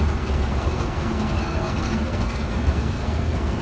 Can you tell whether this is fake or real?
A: fake